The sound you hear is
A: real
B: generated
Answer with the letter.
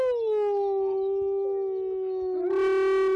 A